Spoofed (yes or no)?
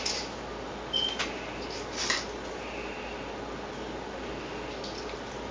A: no